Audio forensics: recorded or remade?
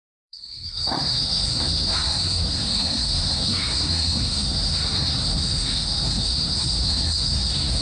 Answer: remade